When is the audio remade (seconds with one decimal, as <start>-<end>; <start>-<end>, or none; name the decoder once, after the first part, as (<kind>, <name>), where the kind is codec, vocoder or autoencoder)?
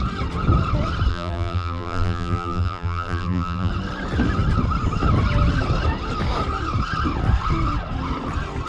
1.1-3.7 (vocoder, BigVGAN v2)